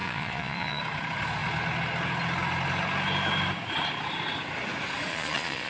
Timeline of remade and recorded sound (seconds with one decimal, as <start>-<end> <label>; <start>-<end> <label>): 0.0-0.8 remade; 0.8-5.1 recorded; 5.1-5.7 remade